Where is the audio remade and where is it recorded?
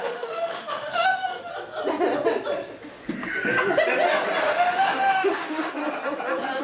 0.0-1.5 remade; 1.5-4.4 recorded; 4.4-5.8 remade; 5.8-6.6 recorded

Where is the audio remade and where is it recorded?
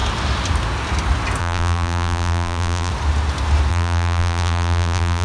0.0-1.4 recorded; 1.4-2.9 remade; 2.9-3.7 recorded; 3.7-5.2 remade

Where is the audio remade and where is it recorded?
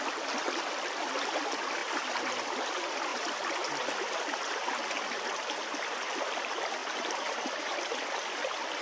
0.0-1.8 recorded; 1.8-2.6 remade; 2.6-3.1 recorded; 3.1-4.9 remade; 4.9-6.8 recorded; 6.8-7.6 remade; 7.6-8.8 recorded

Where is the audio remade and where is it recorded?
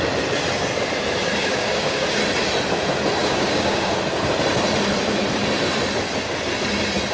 0.0-1.4 recorded; 1.4-2.2 remade; 2.2-3.2 recorded; 3.2-3.9 remade; 3.9-7.1 recorded